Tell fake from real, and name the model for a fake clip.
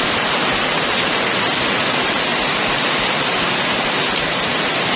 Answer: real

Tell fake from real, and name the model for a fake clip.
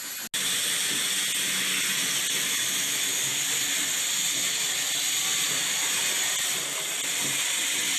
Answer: real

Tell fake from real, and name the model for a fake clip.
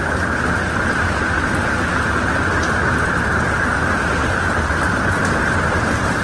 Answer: real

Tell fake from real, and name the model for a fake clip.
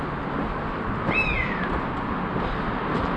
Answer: real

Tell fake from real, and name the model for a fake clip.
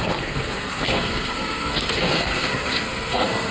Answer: fake, codec, SNAC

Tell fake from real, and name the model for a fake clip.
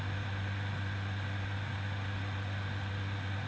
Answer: real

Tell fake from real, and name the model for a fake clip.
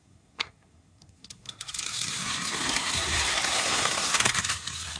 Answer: fake, codec, SNAC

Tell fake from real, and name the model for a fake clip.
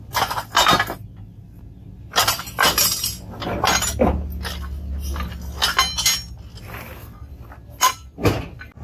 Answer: real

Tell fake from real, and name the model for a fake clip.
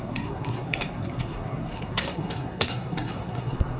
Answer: fake, codec, SNAC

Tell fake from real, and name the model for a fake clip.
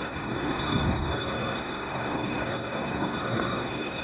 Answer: fake, codec, SNAC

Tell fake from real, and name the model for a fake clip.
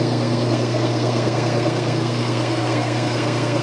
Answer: fake, codec, SNAC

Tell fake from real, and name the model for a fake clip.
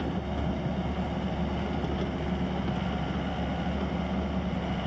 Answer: real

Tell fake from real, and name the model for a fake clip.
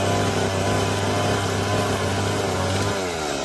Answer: real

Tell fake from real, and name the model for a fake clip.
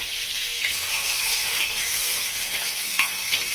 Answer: fake, codec, SNAC